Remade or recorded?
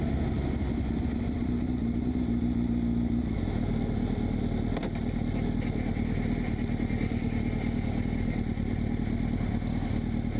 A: recorded